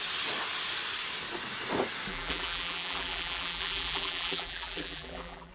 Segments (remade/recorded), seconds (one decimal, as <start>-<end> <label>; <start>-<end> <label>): 0.0-2.1 recorded; 2.1-5.5 remade

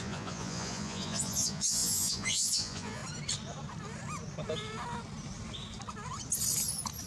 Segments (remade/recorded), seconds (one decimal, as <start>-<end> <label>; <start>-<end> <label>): 0.0-3.0 remade; 3.0-7.1 recorded

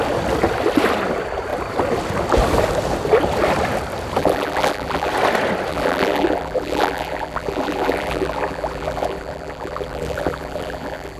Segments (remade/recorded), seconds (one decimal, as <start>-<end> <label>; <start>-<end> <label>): 0.0-4.2 recorded; 4.2-5.1 remade; 5.1-5.7 recorded; 5.7-11.2 remade

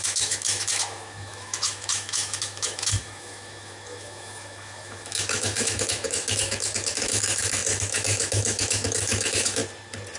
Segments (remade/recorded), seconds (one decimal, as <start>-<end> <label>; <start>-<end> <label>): 0.0-9.6 remade; 9.6-10.2 recorded

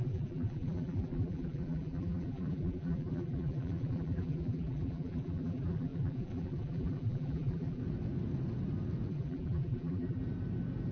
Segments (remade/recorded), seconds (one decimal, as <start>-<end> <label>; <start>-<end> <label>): 0.0-7.8 remade; 7.8-9.1 recorded; 9.1-10.2 remade; 10.2-10.9 recorded